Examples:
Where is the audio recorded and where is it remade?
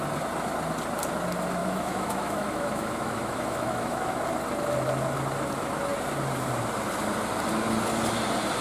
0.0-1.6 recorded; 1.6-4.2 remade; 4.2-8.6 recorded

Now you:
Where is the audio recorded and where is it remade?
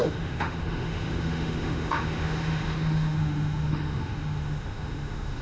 0.0-5.4 remade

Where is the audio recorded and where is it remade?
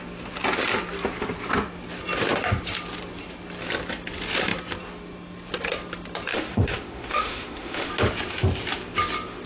0.0-6.3 recorded; 6.3-7.9 remade; 7.9-9.5 recorded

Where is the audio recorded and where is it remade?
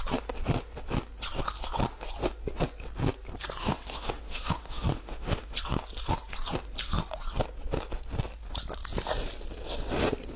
0.0-3.6 recorded; 3.6-5.5 remade; 5.5-10.4 recorded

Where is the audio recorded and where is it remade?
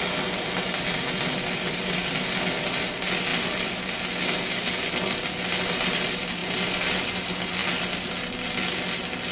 0.0-9.3 recorded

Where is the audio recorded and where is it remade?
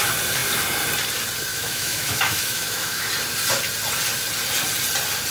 0.0-1.5 recorded; 1.5-3.1 remade; 3.1-5.3 recorded